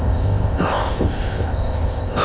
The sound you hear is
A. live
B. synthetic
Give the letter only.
B